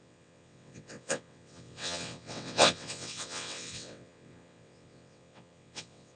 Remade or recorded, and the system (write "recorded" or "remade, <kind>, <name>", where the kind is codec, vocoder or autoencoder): remade, vocoder, WaveNeXt